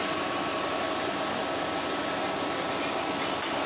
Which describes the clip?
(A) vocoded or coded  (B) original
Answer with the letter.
B